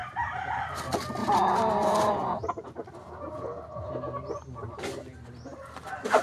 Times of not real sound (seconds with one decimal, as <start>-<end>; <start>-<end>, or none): 0.0-0.6; 1.2-2.1